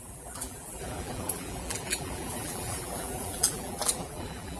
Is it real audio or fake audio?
fake